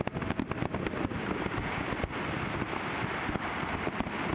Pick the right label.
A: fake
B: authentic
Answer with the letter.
B